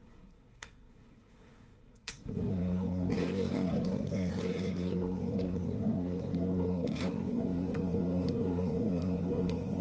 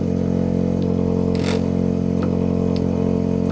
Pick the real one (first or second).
second